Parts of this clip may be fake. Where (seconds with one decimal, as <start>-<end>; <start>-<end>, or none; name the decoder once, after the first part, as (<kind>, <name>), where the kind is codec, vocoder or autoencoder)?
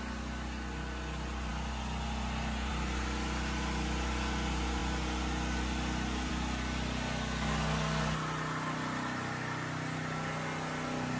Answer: none